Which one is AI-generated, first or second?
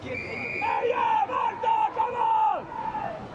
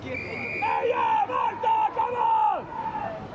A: first